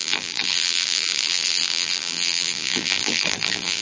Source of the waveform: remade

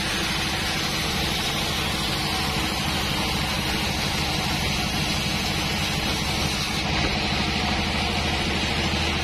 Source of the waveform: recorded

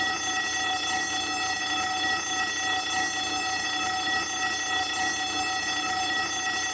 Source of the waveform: recorded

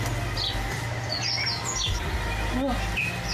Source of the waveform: recorded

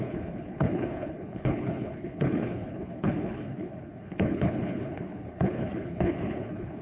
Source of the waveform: remade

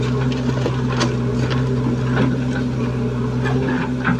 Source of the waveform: recorded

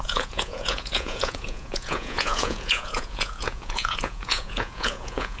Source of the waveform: remade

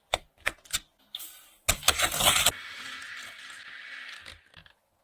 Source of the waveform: recorded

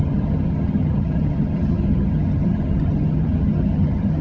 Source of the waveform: remade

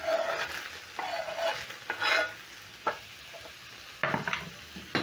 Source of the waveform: recorded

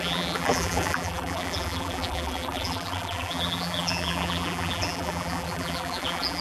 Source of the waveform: remade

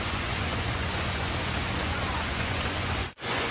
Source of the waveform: remade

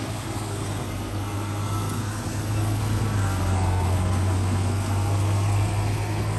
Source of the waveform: remade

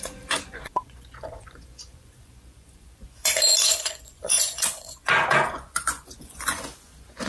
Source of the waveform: remade